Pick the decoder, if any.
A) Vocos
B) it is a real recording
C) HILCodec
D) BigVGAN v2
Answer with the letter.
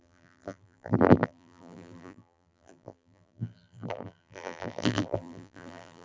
D